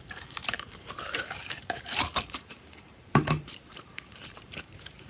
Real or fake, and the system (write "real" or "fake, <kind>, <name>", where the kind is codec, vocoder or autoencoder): fake, vocoder, BigVGAN v2